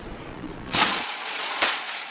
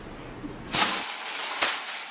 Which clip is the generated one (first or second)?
first